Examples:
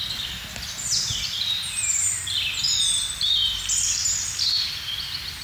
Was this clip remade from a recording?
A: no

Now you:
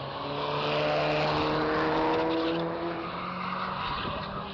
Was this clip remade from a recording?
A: no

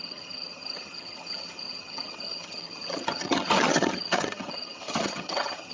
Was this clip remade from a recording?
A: yes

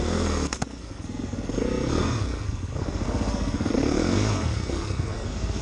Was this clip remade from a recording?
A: yes